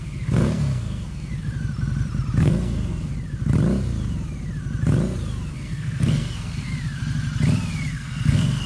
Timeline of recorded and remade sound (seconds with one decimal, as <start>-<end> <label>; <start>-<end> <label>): 0.0-1.3 remade; 1.3-2.4 recorded; 2.4-3.1 remade; 3.1-5.5 recorded; 5.5-6.7 remade; 6.7-7.9 recorded; 7.9-8.7 remade